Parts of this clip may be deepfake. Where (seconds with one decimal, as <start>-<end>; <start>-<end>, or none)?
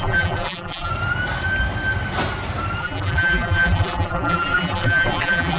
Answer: 0.0-0.9; 2.8-5.6